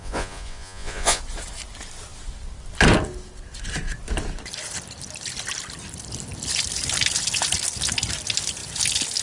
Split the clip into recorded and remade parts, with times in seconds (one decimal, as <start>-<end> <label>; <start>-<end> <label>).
0.0-1.2 remade; 1.2-9.2 recorded